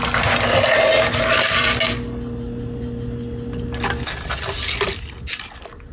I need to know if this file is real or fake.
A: real